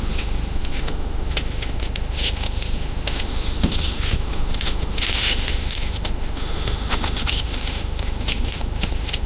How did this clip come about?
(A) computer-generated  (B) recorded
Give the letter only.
A